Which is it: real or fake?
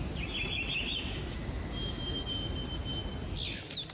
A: real